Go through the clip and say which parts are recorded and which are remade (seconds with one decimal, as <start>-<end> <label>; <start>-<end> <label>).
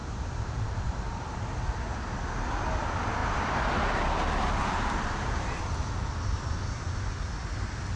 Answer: 0.0-1.0 remade; 1.0-3.2 recorded; 3.2-5.6 remade; 5.6-8.0 recorded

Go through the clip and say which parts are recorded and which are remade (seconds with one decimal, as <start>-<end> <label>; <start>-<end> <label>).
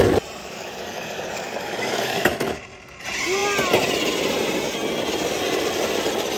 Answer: 0.0-0.4 recorded; 0.4-2.6 remade; 2.6-6.4 recorded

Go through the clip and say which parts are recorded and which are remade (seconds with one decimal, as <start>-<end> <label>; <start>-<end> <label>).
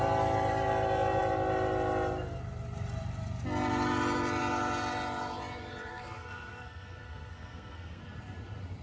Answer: 0.0-5.9 recorded; 5.9-8.0 remade; 8.0-8.8 recorded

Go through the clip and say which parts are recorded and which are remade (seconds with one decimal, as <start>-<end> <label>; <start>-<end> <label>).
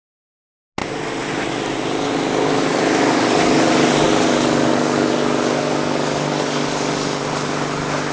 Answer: 0.0-2.7 recorded; 2.7-7.2 remade; 7.2-8.1 recorded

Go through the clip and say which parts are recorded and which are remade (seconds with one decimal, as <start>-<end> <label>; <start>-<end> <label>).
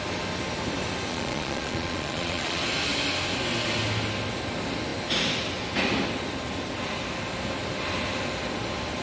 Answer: 0.0-1.1 recorded; 1.1-2.6 remade; 2.6-9.0 recorded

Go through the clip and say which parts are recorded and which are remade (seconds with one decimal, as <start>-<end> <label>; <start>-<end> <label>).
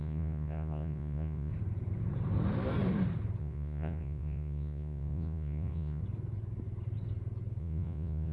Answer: 0.0-1.5 remade; 1.5-3.4 recorded; 3.4-6.0 remade; 6.0-7.6 recorded; 7.6-8.3 remade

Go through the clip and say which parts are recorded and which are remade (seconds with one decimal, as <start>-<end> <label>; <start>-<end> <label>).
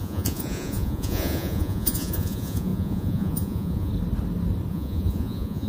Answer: 0.0-3.9 remade; 3.9-4.7 recorded; 4.7-5.7 remade